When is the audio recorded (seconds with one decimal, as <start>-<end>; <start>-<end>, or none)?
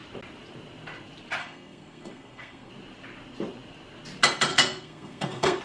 0.0-1.4; 2.7-4.5